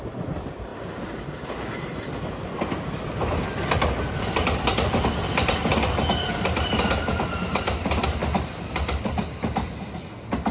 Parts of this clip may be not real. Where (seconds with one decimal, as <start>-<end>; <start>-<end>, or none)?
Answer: 0.0-0.7; 4.2-5.7; 7.5-10.5